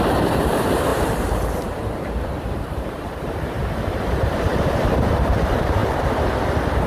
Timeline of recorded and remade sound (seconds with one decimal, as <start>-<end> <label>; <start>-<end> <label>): 0.0-5.8 remade; 5.8-6.9 recorded